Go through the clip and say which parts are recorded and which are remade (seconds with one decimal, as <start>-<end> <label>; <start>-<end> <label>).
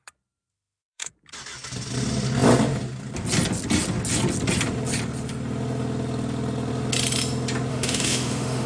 0.0-0.5 recorded; 0.5-1.1 remade; 1.1-7.7 recorded; 7.7-8.7 remade